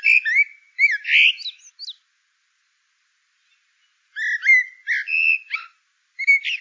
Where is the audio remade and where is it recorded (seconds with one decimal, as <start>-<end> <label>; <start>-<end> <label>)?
0.0-6.6 recorded